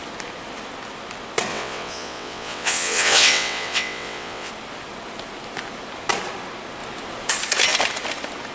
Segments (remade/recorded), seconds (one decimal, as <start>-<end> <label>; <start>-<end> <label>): 0.0-1.5 recorded; 1.5-4.5 remade; 4.5-8.5 recorded